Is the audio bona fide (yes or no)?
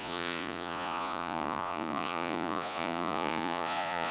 no